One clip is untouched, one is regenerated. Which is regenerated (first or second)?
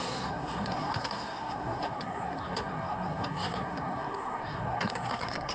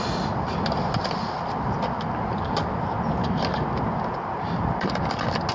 first